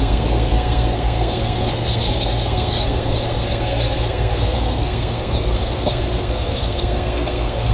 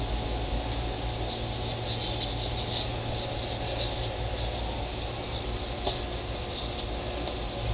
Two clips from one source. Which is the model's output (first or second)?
first